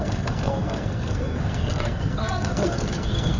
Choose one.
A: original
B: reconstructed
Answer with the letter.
B